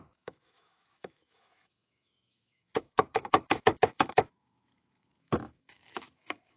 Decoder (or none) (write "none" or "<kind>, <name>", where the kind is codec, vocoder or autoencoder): autoencoder, DAC-VAE